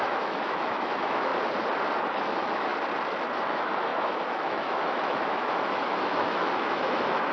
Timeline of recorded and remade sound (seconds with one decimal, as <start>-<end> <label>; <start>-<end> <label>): 0.0-1.3 remade; 1.3-2.1 recorded; 2.1-2.7 remade; 2.7-3.5 recorded; 3.5-7.3 remade